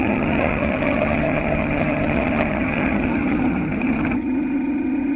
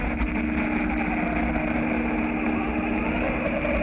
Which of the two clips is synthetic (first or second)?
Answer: first